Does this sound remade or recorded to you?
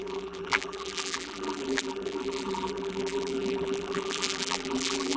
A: remade